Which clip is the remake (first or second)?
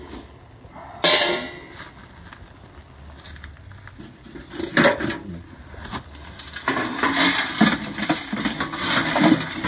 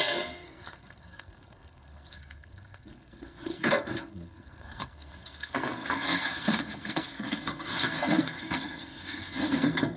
second